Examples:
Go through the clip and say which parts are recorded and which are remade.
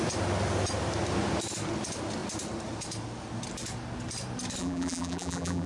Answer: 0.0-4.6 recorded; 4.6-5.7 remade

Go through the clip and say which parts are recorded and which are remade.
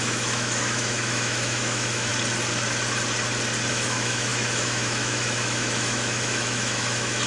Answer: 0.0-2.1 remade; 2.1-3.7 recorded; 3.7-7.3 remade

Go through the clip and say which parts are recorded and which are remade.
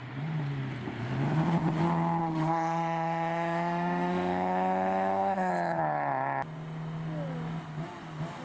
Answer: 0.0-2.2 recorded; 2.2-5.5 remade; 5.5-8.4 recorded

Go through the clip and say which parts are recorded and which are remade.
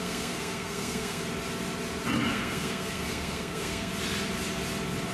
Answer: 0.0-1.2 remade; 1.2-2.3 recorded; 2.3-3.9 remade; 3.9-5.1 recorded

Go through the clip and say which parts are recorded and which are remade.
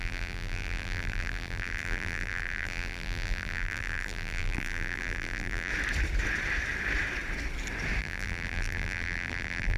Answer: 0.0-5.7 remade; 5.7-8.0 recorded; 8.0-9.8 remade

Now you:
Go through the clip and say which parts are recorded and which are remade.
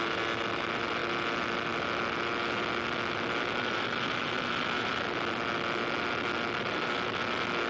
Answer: 0.0-7.7 recorded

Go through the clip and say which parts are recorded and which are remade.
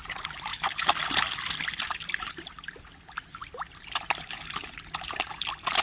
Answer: 0.0-0.5 recorded; 0.5-2.5 remade; 2.5-5.8 recorded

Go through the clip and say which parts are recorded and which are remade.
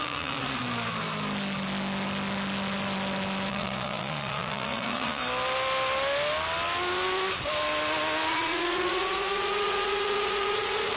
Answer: 0.0-0.6 remade; 0.6-3.5 recorded; 3.5-5.2 remade; 5.2-8.3 recorded; 8.3-11.0 remade